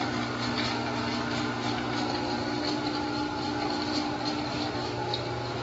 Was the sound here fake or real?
real